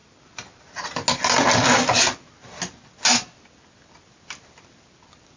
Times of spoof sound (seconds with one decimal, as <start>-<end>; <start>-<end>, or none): none